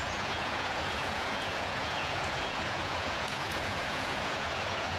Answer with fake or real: fake